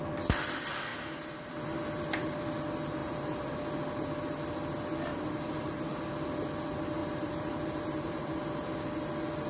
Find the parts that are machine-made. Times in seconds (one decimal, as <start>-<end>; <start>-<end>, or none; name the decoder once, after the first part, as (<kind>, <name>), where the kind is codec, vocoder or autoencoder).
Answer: 0.9-1.5 (vocoder, BigVGAN v2); 3.0-3.6; 5.1-5.9; 7.0-8.4